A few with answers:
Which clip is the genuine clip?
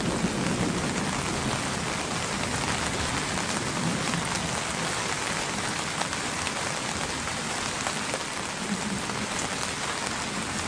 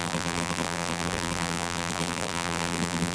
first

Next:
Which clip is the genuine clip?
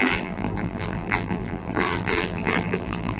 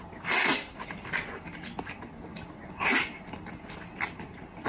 second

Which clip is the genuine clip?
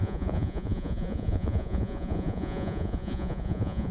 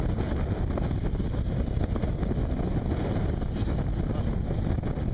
second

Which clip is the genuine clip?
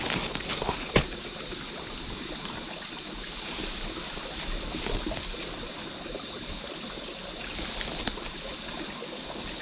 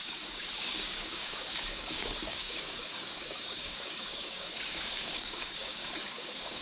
first